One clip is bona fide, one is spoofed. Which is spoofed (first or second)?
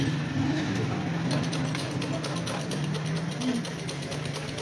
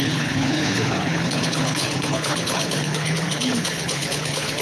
second